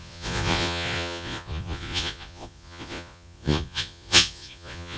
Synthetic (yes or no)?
yes